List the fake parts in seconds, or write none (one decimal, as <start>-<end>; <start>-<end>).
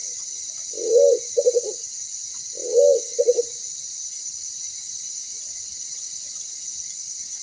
none